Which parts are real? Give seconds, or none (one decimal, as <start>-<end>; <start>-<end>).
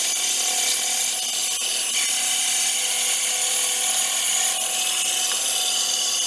0.0-6.3